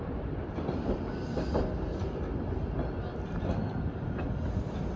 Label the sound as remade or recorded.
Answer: recorded